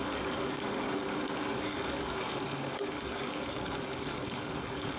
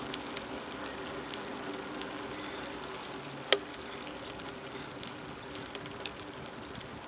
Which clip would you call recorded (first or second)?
second